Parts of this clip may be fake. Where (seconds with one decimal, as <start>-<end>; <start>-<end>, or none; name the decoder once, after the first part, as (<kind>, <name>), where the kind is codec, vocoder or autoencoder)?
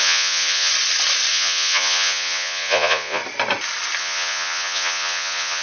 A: 0.0-0.7 (vocoder, Vocos); 1.3-3.2; 4.0-5.6